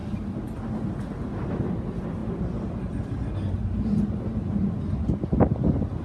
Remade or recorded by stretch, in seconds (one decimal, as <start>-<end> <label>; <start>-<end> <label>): 0.0-6.0 recorded